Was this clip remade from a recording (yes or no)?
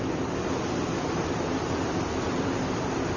no